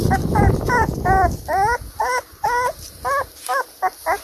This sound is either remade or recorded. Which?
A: recorded